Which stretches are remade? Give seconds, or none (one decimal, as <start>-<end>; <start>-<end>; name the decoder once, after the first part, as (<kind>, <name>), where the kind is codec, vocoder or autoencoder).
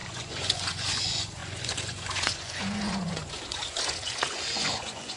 0.0-5.2 (vocoder, Vocos)